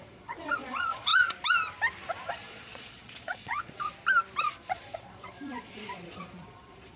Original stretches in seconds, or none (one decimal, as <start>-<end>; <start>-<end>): 1.1-2.3; 3.9-4.4